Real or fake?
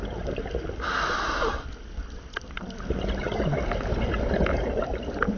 real